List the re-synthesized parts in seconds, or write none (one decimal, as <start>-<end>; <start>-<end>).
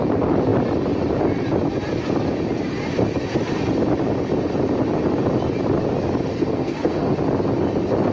6.3-7.1